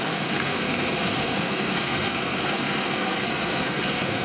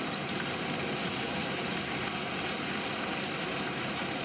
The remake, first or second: first